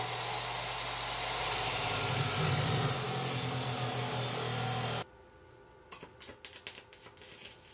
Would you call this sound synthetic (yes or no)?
no